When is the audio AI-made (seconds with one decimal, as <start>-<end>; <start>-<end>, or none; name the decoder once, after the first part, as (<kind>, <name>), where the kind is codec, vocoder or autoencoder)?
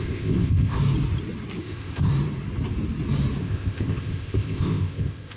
0.0-0.8 (codec, ZipCodec); 1.6-2.1; 3.4-5.4